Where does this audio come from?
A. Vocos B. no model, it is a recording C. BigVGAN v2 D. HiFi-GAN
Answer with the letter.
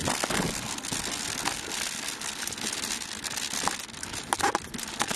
B